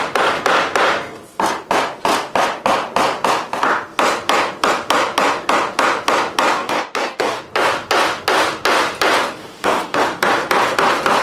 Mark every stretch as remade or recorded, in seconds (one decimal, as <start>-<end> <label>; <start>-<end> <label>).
0.0-6.5 recorded; 6.5-7.4 remade; 7.4-9.4 recorded; 9.4-10.0 remade; 10.0-11.2 recorded